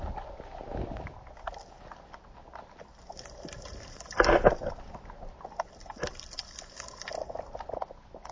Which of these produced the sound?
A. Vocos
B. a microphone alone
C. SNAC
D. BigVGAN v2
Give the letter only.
B